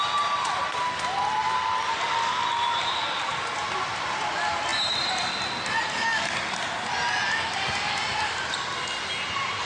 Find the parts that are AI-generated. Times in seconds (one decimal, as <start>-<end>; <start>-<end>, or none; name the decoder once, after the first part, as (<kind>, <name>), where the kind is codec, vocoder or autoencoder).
1.4-3.2 (vocoder, BigVGAN v2); 3.6-4.3